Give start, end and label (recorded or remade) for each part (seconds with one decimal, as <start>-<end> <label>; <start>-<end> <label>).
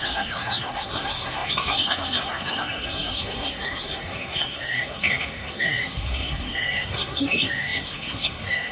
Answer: 0.0-8.7 remade